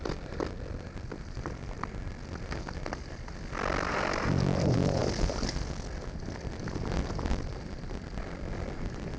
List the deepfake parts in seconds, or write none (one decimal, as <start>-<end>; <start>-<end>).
none